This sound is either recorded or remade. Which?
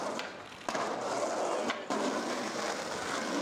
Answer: recorded